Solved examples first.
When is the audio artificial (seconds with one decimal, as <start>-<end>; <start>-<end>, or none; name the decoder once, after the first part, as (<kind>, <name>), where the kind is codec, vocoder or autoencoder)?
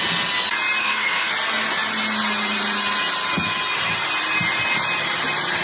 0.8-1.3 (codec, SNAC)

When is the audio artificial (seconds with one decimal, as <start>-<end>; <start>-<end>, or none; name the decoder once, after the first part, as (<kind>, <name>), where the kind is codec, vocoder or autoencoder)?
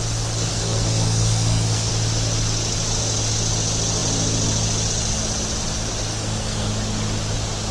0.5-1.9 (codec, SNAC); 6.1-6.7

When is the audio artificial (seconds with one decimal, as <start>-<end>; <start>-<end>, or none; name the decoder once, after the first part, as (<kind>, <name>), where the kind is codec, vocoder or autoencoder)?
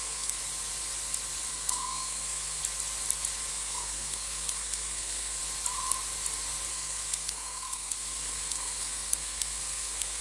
0.0-0.4 (codec, SNAC); 1.5-2.6; 3.5-5.4; 6.7-10.2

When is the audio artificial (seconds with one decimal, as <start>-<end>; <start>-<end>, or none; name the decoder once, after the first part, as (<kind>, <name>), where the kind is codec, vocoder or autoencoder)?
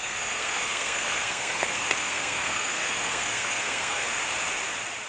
0.0-4.2 (codec, SNAC)